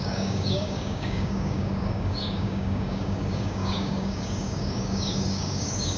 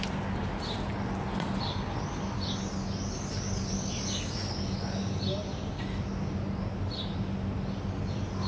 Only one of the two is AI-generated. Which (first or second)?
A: first